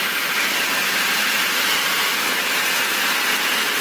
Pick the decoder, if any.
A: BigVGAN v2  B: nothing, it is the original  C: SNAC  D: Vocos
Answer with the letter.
B